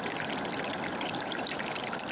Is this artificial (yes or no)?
no